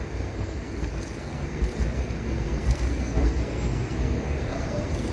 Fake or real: fake